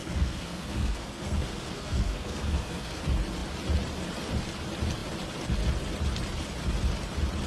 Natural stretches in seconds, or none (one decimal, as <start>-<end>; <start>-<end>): 3.0-7.5